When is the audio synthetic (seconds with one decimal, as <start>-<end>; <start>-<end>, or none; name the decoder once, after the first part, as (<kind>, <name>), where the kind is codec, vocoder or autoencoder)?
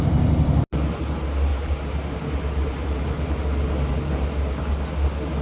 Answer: 1.5-4.7 (vocoder, BigVGAN v2)